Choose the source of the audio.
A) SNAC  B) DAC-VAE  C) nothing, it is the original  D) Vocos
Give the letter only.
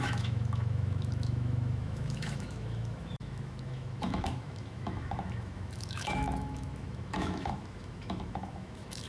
B